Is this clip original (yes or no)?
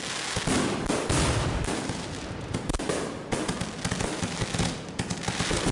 yes